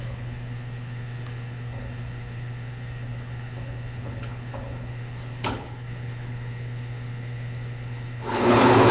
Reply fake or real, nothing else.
fake